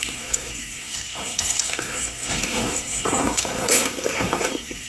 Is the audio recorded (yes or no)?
no